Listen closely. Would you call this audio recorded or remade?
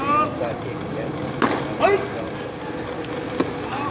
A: recorded